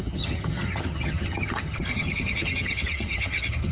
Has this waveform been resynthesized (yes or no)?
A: yes